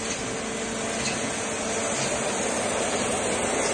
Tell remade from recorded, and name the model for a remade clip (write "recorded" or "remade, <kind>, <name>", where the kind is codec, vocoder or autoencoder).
recorded